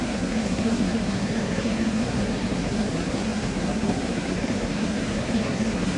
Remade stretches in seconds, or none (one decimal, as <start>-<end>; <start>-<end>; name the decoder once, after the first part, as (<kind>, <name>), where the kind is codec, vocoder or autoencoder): 0.0-6.0 (codec, SNAC)